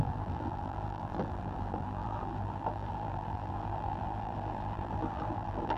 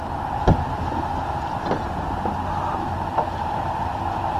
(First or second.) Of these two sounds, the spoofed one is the first